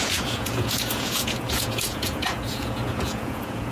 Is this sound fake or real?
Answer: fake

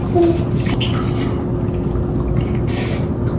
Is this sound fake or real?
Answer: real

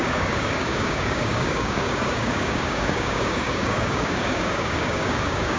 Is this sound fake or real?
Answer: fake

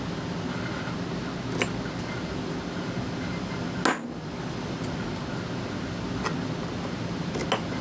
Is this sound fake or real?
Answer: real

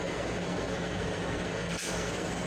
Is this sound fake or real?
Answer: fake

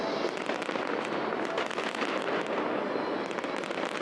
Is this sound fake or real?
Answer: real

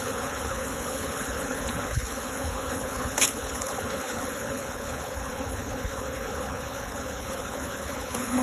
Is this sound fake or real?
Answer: fake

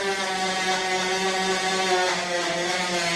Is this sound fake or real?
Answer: real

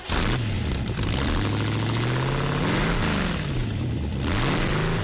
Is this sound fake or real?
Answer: real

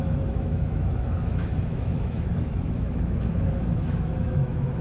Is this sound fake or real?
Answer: fake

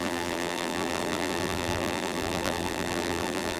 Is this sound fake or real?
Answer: fake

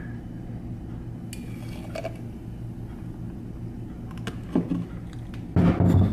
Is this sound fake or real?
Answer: real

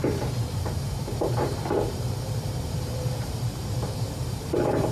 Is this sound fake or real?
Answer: fake